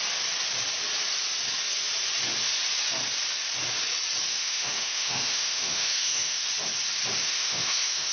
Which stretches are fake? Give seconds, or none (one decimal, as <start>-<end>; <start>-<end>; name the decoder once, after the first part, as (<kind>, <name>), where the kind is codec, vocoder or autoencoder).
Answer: 4.3-6.5 (autoencoder, DAC-VAE); 7.2-8.1